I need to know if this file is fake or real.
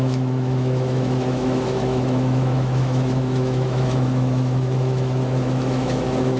fake